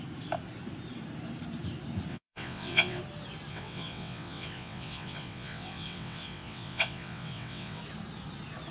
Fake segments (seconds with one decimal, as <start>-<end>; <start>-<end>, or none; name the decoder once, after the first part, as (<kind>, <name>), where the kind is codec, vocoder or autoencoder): 2.1-3.0 (vocoder, WaveNeXt); 3.5-7.8